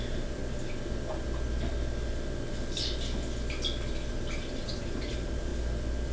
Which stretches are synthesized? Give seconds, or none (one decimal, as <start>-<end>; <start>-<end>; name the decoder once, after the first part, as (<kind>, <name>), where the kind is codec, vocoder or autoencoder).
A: 0.0-0.4 (vocoder, BigVGAN v2); 4.1-5.5